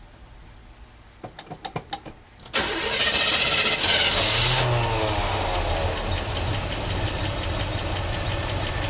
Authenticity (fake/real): real